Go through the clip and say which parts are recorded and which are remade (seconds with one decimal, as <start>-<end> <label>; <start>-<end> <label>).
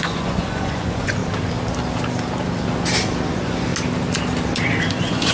0.0-1.2 remade; 1.2-3.3 recorded; 3.3-3.7 remade; 3.7-4.8 recorded; 4.8-5.3 remade